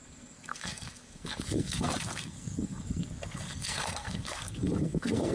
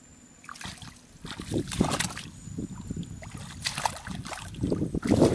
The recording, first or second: second